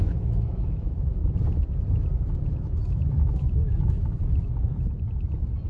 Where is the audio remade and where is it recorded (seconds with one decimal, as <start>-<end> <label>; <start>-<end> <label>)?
0.0-1.2 remade; 1.2-1.9 recorded; 1.9-4.7 remade; 4.7-5.7 recorded